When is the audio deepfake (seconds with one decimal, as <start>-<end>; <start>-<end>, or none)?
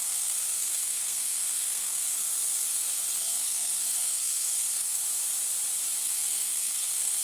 0.0-5.0; 6.0-7.2